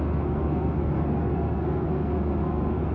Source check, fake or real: fake